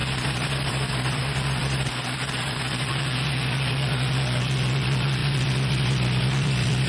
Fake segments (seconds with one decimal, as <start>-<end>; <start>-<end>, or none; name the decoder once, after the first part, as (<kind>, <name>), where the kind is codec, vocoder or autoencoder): 0.0-1.2 (vocoder, BigVGAN v2); 1.6-2.9; 5.2-6.9